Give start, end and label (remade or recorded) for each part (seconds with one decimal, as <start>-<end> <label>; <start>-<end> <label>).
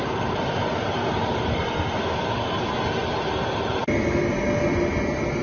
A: 0.0-5.4 recorded